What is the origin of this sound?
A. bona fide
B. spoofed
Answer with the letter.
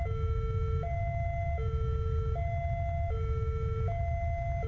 A